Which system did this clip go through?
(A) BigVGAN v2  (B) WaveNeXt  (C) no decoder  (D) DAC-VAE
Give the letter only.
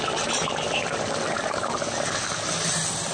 C